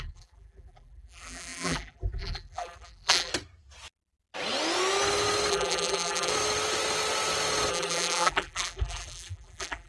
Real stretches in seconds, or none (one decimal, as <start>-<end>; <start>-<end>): 3.3-5.5; 6.3-7.7